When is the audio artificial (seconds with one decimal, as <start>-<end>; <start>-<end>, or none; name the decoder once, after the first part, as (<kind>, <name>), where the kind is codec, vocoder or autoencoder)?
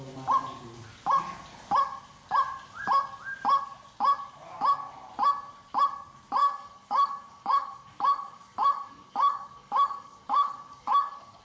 6.4-11.4 (codec, DAC)